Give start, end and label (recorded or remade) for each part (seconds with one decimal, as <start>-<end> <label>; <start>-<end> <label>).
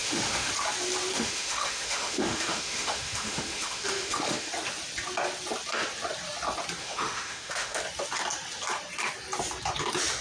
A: 0.0-0.5 remade; 0.5-1.1 recorded; 1.1-4.5 remade; 4.5-6.8 recorded; 6.8-7.8 remade; 7.8-10.2 recorded